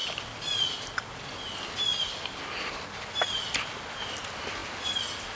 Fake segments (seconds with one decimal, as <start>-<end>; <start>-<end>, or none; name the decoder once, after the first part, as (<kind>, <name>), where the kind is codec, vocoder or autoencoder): none